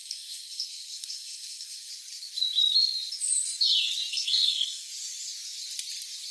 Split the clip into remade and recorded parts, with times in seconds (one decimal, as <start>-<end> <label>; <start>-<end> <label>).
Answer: 0.0-1.9 remade; 1.9-4.1 recorded; 4.1-4.9 remade; 4.9-6.3 recorded

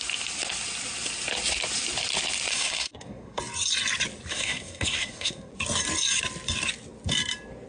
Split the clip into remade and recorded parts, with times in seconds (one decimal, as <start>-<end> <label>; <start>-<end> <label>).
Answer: 0.0-2.5 recorded; 2.5-3.4 remade; 3.4-4.3 recorded; 4.3-5.5 remade; 5.5-7.7 recorded

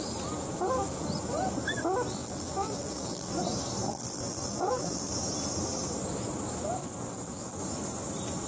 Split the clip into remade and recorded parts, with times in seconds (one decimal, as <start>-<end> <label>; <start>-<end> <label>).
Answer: 0.0-2.1 recorded; 2.1-3.3 remade; 3.3-3.8 recorded; 3.8-5.1 remade; 5.1-6.8 recorded; 6.8-7.6 remade; 7.6-8.5 recorded

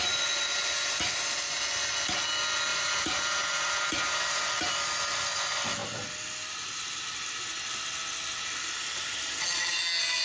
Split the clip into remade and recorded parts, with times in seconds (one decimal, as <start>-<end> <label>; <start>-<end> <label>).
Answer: 0.0-2.7 recorded; 2.7-4.4 remade; 4.4-10.2 recorded